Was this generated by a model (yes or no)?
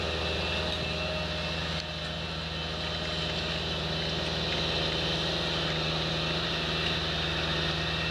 no